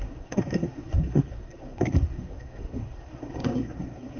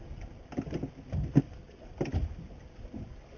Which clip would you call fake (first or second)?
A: first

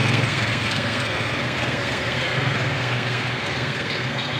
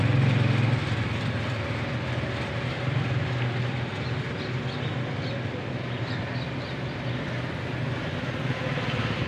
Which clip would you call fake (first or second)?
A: first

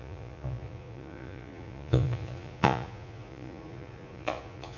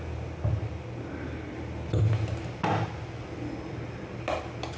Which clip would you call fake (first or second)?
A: first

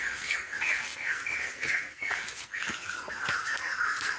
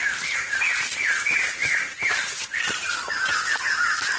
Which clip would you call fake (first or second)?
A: first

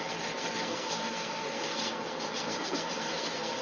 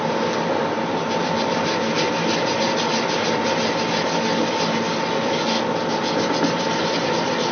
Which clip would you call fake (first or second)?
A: first